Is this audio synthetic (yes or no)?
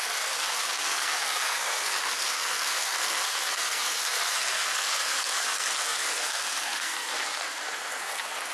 yes